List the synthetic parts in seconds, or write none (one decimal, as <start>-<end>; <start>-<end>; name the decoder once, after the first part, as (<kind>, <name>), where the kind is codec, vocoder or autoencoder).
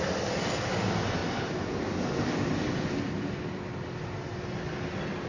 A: none